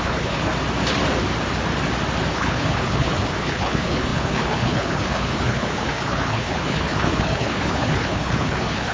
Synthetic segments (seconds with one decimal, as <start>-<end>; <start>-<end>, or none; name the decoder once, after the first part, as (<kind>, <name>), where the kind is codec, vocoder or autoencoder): 0.0-0.5 (codec, HILCodec); 2.3-8.9